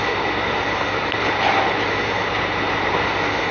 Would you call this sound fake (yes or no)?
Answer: no